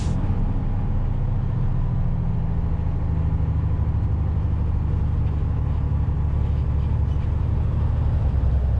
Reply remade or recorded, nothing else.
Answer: recorded